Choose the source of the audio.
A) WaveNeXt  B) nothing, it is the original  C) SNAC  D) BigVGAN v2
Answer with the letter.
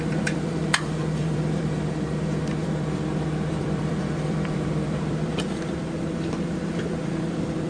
D